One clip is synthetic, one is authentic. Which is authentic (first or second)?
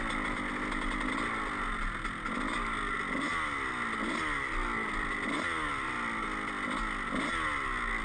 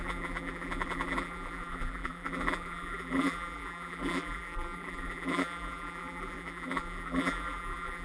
first